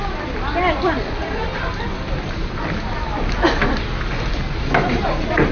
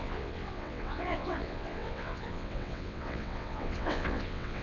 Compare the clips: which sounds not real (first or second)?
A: second